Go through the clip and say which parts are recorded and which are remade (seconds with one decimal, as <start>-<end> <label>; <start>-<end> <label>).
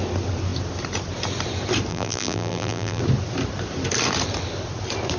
0.0-1.9 recorded; 1.9-3.0 remade; 3.0-5.2 recorded